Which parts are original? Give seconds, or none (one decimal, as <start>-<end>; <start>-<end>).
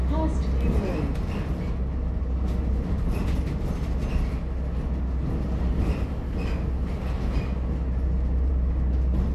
0.0-9.3